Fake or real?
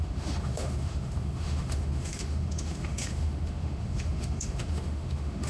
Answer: fake